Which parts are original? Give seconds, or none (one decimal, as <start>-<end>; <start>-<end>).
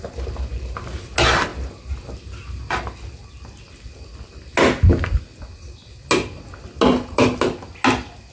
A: 0.0-8.3